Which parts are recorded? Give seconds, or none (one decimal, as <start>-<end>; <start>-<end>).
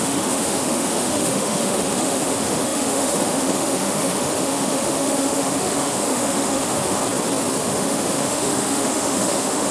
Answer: 7.0-7.6